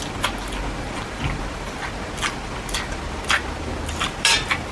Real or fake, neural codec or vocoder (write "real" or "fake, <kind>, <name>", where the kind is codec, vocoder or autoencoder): real